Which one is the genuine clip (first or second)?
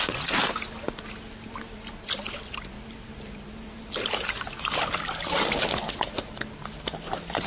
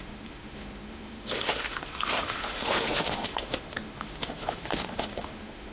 first